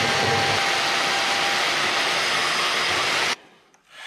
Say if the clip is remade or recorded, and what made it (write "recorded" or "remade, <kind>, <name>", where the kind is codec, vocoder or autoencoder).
recorded